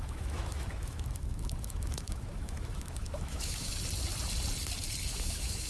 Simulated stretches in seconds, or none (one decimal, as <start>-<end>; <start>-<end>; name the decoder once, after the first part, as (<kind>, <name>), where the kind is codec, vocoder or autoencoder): 0.0-3.7 (autoencoder, DAC-VAE); 5.1-5.7